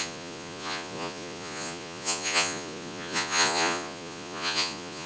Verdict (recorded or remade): remade